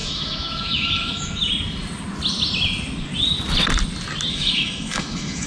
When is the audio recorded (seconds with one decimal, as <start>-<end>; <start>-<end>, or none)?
1.4-4.3